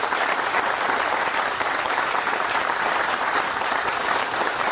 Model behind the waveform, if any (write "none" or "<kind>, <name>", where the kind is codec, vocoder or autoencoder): vocoder, BigVGAN v2